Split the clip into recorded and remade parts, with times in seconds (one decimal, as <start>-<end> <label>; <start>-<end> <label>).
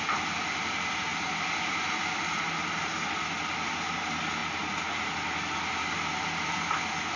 0.0-7.2 recorded